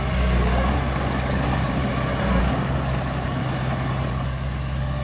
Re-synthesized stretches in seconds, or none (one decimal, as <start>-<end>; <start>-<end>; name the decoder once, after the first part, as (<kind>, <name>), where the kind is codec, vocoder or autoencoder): 0.0-1.8 (codec, DAC); 2.4-3.4; 4.1-5.0